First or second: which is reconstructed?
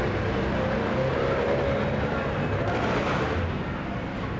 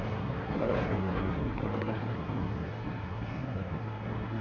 second